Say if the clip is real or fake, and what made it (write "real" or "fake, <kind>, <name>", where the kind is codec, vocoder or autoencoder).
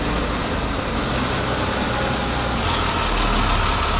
real